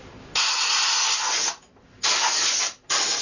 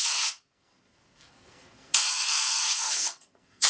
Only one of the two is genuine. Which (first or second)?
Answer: first